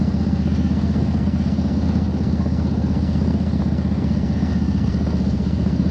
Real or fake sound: fake